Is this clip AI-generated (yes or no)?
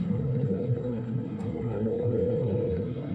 yes